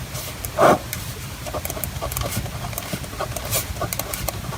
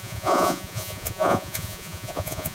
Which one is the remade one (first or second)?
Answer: second